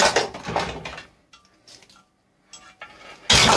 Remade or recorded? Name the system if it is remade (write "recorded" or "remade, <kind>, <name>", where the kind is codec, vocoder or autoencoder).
recorded